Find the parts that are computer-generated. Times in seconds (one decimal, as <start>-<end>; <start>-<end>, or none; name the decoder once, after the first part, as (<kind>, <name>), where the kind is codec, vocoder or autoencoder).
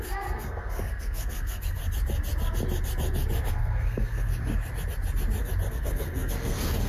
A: 0.0-1.8 (codec, SNAC); 3.5-4.3; 5.7-6.9